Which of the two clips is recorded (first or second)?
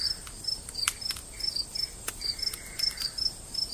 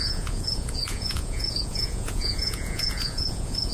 first